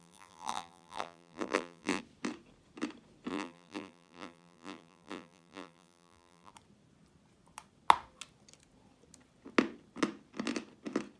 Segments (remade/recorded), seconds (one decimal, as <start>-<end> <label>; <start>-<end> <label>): 0.0-2.0 remade; 2.0-3.3 recorded; 3.3-6.5 remade; 6.5-11.2 recorded